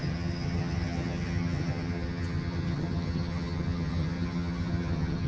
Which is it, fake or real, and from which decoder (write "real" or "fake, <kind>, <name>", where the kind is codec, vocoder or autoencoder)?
fake, vocoder, HiFi-GAN